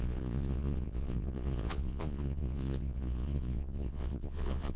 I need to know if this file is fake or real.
fake